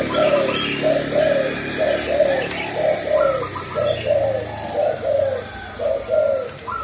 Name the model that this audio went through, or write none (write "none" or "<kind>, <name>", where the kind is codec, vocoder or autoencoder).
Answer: none